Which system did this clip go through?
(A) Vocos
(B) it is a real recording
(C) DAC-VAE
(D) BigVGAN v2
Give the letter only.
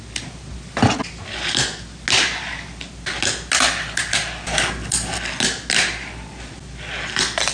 B